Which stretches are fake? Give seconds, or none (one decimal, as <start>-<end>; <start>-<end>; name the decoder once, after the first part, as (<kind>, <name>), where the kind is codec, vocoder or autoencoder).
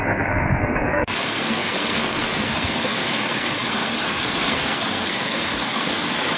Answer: 0.0-6.4 (codec, SNAC)